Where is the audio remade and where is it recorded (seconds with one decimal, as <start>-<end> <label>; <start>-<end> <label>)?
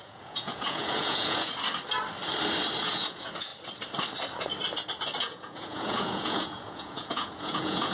0.0-1.5 remade; 1.5-2.8 recorded; 2.8-3.5 remade; 3.5-5.2 recorded; 5.2-7.9 remade